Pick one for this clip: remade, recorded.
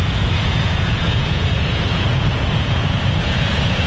remade